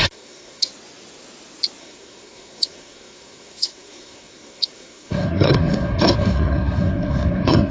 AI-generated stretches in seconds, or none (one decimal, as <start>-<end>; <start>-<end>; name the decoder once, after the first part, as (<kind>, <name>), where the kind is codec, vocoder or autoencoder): 0.0-0.7 (codec, SNAC); 1.8-7.7